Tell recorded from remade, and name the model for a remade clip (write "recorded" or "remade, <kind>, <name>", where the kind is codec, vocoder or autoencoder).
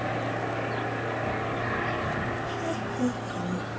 recorded